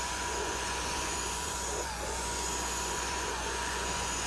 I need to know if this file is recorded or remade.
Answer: remade